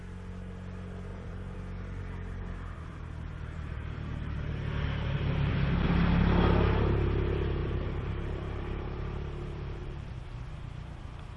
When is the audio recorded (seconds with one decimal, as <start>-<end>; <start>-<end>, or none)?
0.0-1.1; 5.5-7.6; 10.1-11.4